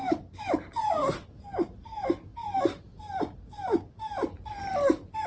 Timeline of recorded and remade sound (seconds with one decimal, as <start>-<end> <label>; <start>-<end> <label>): 0.0-5.3 recorded